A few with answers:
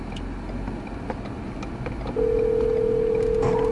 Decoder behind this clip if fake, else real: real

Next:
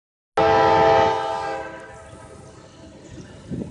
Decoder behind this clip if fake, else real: real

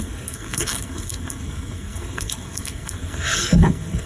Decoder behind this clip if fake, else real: fake, codec, SNAC